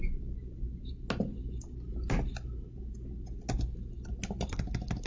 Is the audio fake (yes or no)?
no